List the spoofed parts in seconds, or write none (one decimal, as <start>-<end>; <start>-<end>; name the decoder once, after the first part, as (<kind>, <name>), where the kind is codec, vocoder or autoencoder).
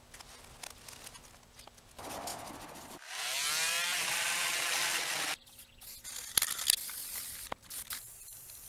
2.3-4.2 (vocoder, BigVGAN v2); 6.8-7.5